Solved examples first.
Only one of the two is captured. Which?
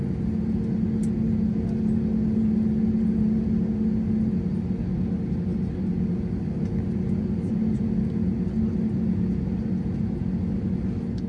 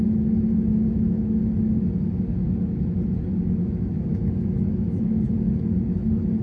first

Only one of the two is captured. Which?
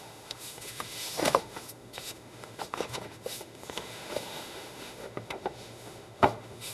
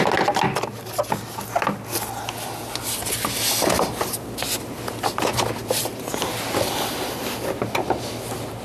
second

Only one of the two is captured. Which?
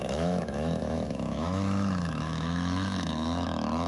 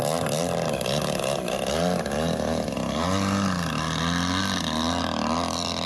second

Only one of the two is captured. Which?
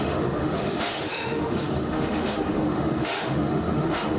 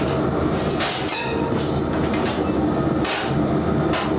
second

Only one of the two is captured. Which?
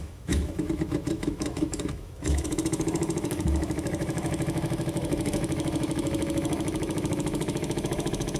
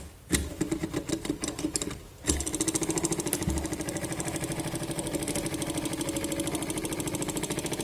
second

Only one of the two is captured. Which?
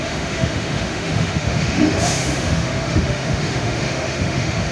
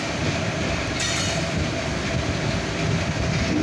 second